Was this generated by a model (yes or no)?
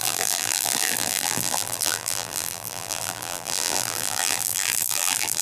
yes